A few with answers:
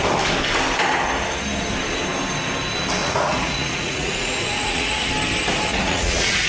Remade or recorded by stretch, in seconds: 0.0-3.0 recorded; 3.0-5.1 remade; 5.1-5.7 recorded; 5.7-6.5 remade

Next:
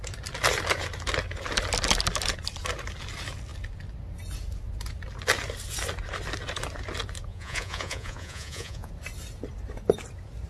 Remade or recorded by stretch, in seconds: 0.0-7.3 recorded; 7.3-8.9 remade; 8.9-10.5 recorded

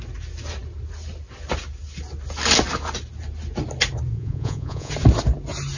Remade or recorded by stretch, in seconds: 0.0-4.1 recorded; 4.1-4.9 remade; 4.9-5.8 recorded

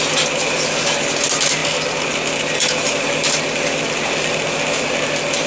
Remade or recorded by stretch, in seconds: 0.0-5.5 recorded

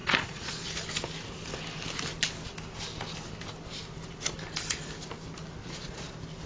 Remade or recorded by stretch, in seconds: 0.0-0.7 remade; 0.7-5.6 recorded; 5.6-6.1 remade; 6.1-6.5 recorded

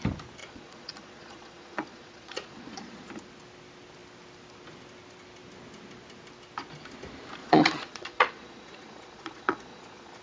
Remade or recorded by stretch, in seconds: 0.0-0.4 recorded; 0.4-3.1 remade; 3.1-7.4 recorded; 7.4-10.2 remade

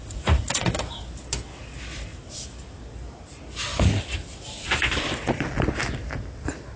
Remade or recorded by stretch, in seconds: 0.0-0.9 remade; 0.9-6.8 recorded